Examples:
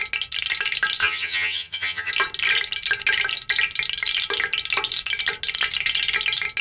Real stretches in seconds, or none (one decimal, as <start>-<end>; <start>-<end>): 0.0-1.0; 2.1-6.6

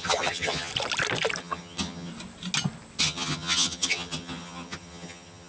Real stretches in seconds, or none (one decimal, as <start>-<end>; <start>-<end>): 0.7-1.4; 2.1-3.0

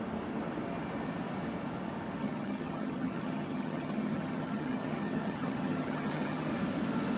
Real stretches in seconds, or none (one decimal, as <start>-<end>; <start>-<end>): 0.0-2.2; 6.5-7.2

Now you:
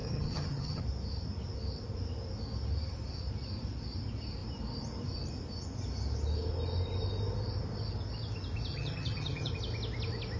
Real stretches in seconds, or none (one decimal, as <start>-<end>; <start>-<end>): 0.8-8.7; 9.5-10.4

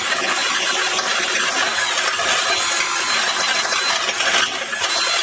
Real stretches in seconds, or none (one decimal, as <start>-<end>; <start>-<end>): 0.0-5.2